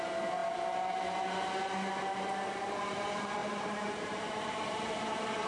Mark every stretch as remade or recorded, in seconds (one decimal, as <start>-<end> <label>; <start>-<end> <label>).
0.0-3.4 recorded; 3.4-5.5 remade